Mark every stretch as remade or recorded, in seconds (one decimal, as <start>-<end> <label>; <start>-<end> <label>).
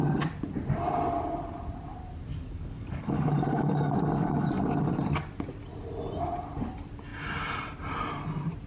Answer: 0.0-2.3 recorded; 2.3-4.6 remade; 4.6-8.7 recorded